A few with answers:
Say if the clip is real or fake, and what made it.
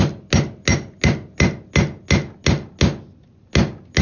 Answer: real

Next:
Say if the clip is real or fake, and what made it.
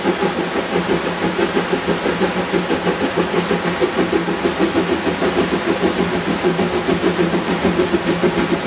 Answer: real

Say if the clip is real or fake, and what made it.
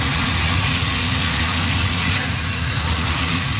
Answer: fake, vocoder, Vocos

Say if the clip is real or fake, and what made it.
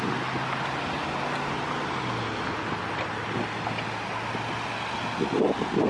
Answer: real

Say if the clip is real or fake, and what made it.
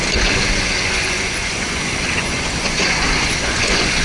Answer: fake, vocoder, Vocos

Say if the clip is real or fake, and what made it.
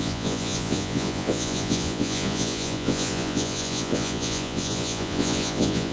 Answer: fake, vocoder, Vocos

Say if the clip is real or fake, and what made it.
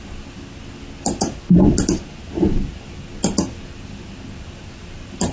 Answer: real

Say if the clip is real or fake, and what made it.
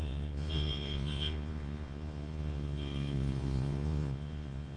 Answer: fake, vocoder, Vocos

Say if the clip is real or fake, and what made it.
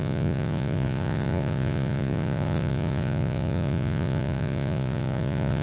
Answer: fake, vocoder, Vocos